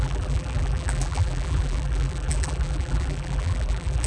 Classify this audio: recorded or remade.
remade